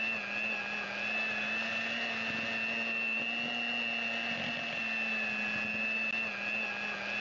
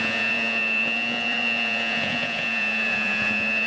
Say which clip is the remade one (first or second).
second